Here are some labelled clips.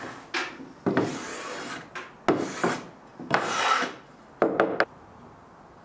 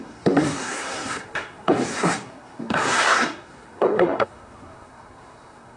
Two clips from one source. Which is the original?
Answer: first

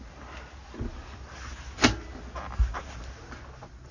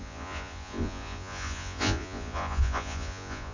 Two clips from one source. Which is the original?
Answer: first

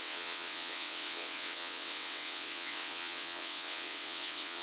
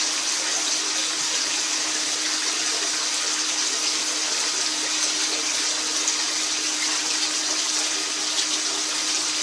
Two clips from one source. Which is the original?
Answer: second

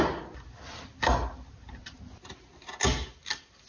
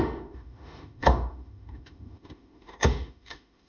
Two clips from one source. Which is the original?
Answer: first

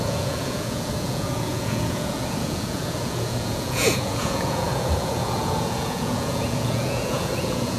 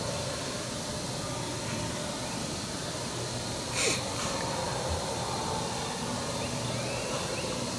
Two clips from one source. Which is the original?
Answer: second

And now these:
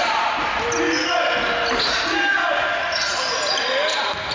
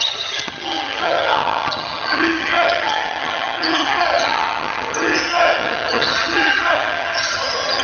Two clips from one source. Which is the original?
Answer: first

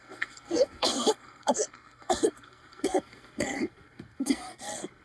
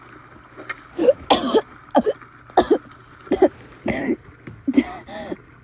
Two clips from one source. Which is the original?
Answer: second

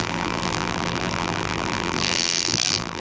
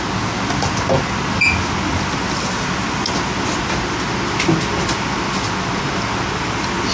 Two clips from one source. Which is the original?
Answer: second